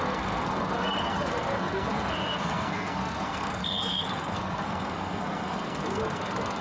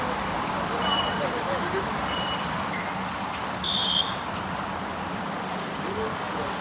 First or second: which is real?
second